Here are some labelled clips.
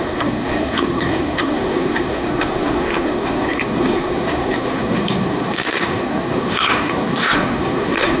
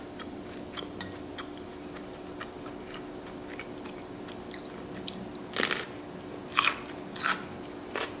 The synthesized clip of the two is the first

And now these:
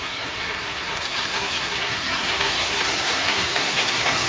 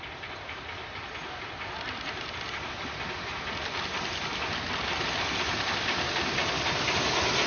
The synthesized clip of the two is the first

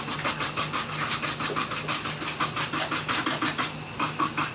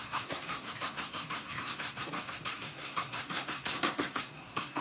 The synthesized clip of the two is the second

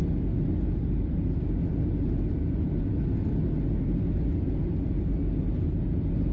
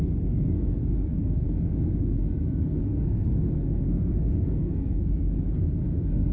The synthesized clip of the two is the second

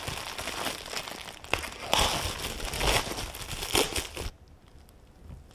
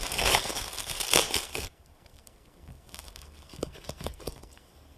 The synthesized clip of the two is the second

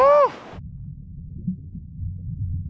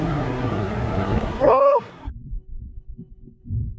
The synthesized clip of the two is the second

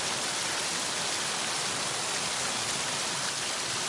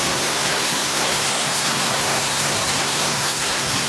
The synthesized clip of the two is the second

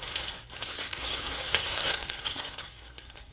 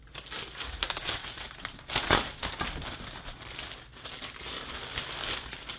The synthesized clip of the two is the first